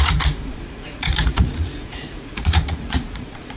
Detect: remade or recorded remade